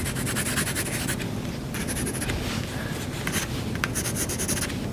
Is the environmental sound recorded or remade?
recorded